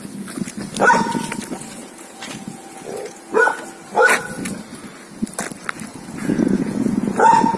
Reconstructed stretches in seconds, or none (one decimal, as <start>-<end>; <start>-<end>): 1.8-3.6; 5.9-7.6